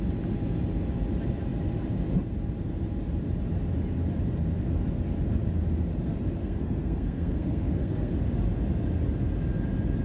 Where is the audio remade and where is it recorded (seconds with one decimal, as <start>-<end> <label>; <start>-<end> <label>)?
0.0-6.4 recorded; 6.4-8.1 remade; 8.1-10.0 recorded